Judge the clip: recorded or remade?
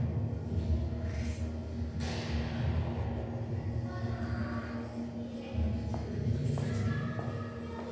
recorded